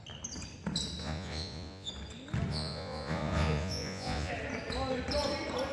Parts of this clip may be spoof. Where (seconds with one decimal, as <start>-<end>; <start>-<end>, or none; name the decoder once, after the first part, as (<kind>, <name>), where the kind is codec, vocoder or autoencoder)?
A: 1.0-1.9 (vocoder, Vocos); 2.5-4.3